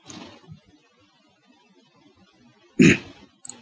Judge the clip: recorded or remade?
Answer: recorded